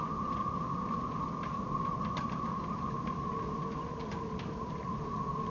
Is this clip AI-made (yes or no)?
no